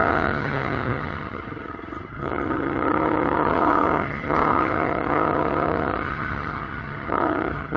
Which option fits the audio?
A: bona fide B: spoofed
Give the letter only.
B